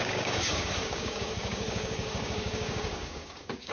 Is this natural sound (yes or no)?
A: no